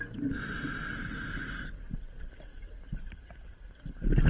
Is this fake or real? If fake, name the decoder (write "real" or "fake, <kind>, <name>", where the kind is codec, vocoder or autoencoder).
real